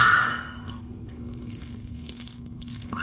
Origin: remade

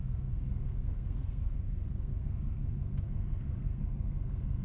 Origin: remade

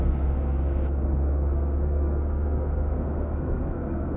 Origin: remade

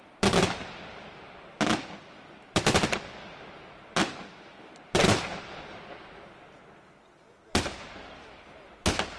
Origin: recorded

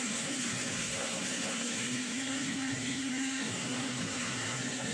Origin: remade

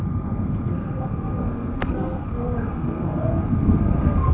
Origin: remade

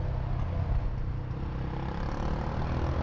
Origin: recorded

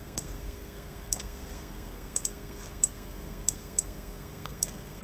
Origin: remade